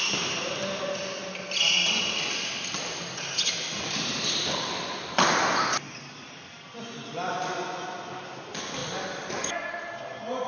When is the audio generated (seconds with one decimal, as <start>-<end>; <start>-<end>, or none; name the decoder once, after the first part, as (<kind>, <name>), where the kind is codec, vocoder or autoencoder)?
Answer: none